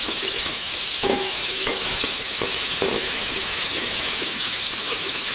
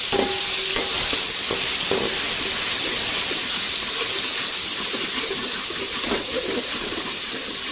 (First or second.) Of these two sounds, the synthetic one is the first